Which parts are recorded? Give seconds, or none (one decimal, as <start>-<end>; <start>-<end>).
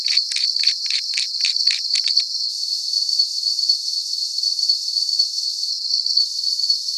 0.0-2.5; 5.7-6.2